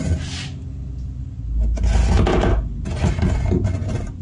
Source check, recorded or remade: recorded